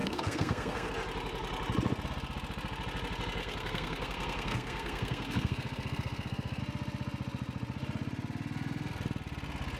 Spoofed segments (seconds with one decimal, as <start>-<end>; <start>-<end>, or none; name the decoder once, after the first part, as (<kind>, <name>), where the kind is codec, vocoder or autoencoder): 0.0-0.9 (codec, SNAC); 3.4-6.6